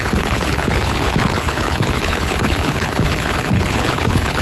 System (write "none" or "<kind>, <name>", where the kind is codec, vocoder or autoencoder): codec, HILCodec